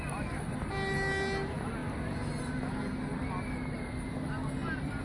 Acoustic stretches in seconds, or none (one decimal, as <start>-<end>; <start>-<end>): 0.0-5.0